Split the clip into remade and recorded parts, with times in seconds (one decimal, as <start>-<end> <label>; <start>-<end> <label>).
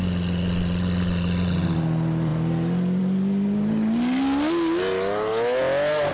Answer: 0.0-6.1 recorded